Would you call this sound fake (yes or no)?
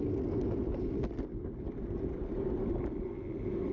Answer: no